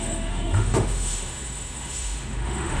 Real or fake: fake